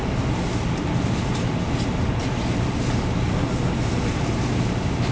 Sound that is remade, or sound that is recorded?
recorded